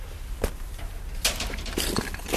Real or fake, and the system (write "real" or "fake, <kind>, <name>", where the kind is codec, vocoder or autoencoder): real